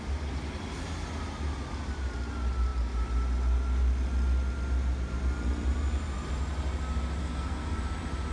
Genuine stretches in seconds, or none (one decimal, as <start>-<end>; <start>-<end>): 0.0-7.2; 7.8-8.3